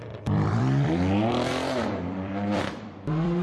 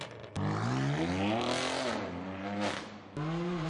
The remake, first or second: first